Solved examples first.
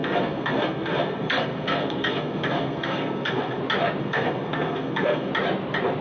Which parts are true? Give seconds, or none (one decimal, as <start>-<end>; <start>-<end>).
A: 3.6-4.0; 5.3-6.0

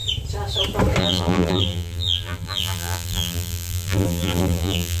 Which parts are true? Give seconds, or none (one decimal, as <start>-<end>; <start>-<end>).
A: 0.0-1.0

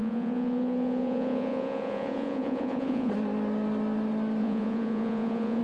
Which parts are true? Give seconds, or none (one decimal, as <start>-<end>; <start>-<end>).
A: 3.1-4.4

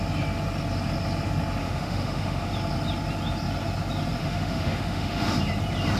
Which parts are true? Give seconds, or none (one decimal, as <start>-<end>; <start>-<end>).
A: 0.0-1.6; 2.5-4.2; 5.4-6.0